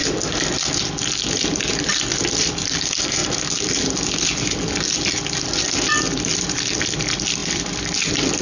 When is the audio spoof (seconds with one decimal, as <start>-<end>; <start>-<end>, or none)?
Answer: 1.4-3.2; 5.9-8.4